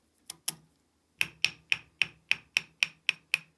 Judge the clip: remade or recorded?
recorded